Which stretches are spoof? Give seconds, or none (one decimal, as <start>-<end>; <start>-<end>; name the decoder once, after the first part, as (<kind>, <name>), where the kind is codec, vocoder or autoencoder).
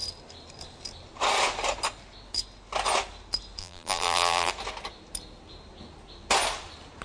3.6-4.5 (vocoder, BigVGAN v2)